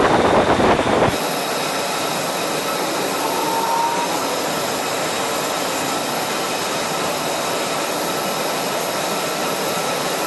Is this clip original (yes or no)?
yes